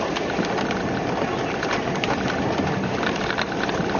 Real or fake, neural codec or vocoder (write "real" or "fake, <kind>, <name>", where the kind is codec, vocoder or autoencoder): real